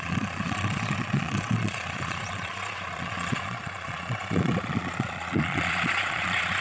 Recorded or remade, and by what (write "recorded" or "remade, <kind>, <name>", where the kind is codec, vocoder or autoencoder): remade, vocoder, Vocos